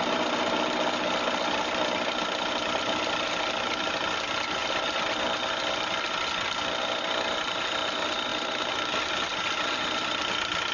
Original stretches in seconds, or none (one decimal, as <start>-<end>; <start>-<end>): 0.0-10.7